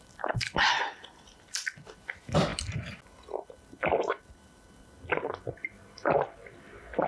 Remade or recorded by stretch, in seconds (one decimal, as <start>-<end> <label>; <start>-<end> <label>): 0.0-7.1 recorded

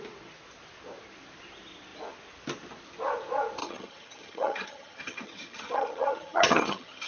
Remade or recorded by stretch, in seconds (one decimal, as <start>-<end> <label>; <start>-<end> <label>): 0.0-3.6 recorded; 3.6-7.1 remade

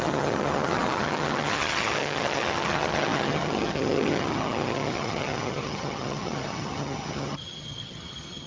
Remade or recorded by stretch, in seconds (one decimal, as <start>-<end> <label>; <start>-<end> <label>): 0.0-8.5 remade

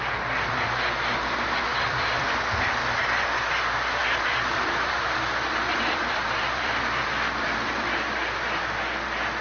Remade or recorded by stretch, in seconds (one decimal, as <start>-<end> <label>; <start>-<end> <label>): 0.0-1.7 recorded; 1.7-2.8 remade; 2.8-4.0 recorded; 4.0-8.1 remade; 8.1-9.4 recorded

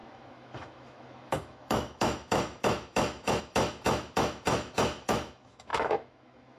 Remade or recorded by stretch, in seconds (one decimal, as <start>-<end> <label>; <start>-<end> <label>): 0.0-6.6 remade

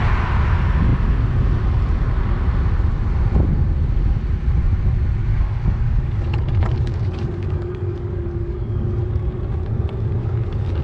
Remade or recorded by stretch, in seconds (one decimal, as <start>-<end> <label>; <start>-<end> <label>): 0.0-5.3 recorded; 5.3-8.9 remade; 8.9-10.2 recorded; 10.2-10.8 remade

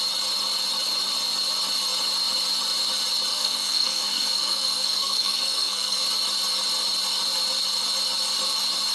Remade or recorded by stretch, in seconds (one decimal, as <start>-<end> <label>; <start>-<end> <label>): 0.0-3.3 recorded; 3.3-6.0 remade; 6.0-8.9 recorded